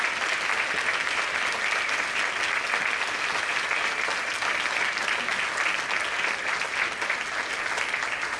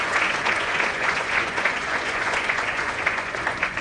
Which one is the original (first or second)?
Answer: first